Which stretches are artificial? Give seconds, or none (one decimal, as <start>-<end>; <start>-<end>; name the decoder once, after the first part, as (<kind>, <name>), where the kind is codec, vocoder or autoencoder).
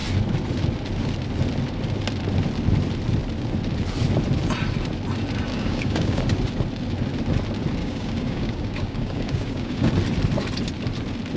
5.5-6.2 (codec, DAC); 7.8-9.9